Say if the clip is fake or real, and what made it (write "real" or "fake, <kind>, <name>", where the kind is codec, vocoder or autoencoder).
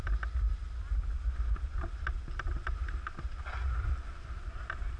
real